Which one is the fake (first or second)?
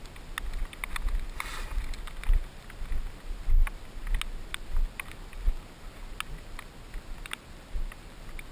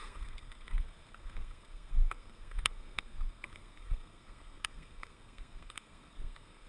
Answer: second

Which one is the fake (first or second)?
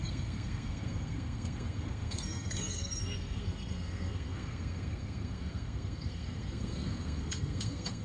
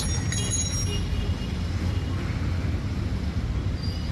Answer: first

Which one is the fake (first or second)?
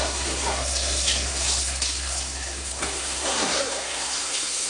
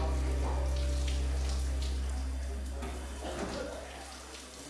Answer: first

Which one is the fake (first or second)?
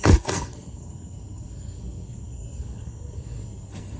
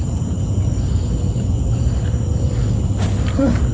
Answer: first